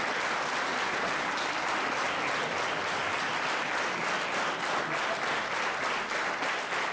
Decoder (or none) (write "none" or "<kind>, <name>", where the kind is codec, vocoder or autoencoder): none